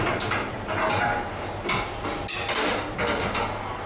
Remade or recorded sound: recorded